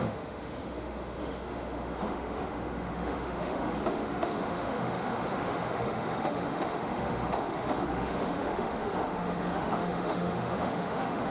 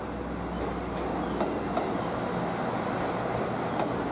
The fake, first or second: first